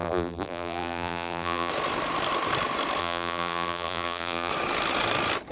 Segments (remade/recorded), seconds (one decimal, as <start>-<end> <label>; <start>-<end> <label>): 0.0-1.7 remade; 1.7-3.0 recorded; 3.0-4.5 remade; 4.5-5.5 recorded